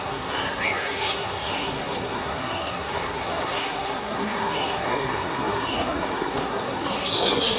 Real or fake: fake